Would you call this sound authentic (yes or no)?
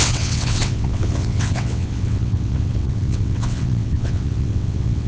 no